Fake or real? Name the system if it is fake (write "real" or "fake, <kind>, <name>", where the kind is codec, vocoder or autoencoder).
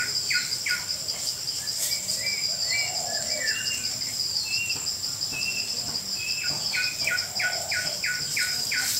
real